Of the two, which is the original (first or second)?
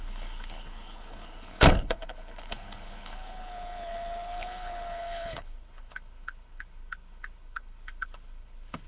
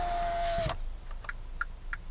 second